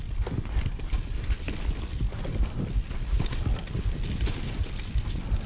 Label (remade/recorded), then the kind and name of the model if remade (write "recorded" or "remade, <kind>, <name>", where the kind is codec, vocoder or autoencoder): recorded